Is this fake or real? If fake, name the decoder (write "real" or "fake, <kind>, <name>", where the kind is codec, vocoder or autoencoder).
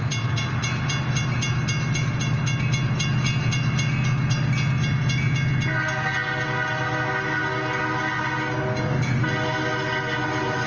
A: real